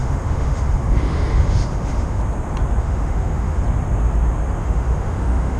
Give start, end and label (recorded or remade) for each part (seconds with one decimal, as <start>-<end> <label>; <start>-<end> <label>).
0.0-2.2 remade; 2.2-2.8 recorded; 2.8-3.6 remade; 3.6-4.6 recorded; 4.6-5.6 remade